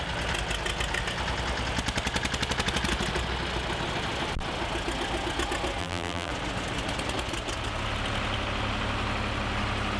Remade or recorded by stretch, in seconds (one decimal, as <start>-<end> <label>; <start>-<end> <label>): 0.0-5.8 recorded; 5.8-6.3 remade; 6.3-10.0 recorded